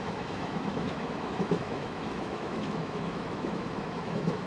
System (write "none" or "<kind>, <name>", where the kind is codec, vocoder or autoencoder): autoencoder, DAC-VAE